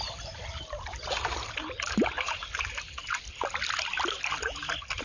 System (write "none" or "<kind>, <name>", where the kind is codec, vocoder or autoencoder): none